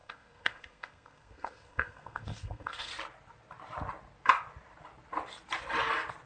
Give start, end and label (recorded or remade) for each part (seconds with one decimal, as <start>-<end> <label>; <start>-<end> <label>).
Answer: 0.0-2.9 remade; 2.9-6.3 recorded